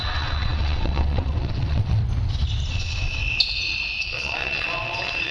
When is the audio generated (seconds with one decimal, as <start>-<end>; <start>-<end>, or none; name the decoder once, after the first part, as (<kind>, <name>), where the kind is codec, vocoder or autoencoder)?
0.0-2.0 (vocoder, WaveNeXt); 2.7-3.2; 4.0-5.3